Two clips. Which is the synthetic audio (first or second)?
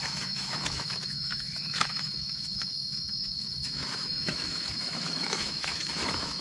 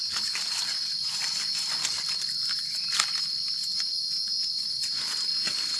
first